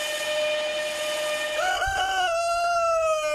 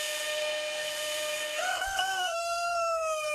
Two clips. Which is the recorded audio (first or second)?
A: first